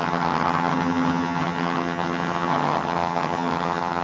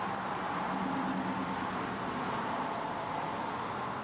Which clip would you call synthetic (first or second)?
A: first